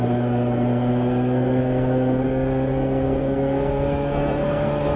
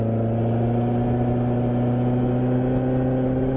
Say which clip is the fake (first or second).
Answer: first